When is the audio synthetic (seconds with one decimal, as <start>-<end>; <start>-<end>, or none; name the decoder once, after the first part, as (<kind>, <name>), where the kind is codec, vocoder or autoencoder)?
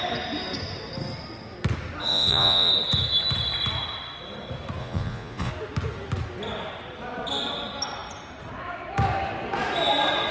2.1-2.7 (vocoder, Vocos); 4.8-5.5